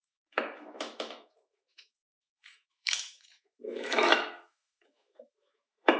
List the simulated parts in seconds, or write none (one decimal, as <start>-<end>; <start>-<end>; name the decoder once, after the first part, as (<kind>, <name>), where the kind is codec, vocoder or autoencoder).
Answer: 0.0-6.0 (autoencoder, DAC-VAE)